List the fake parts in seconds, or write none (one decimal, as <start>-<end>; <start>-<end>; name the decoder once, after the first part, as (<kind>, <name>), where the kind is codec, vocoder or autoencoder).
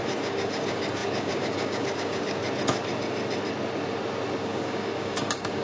0.0-2.4 (codec, DAC); 4.4-5.6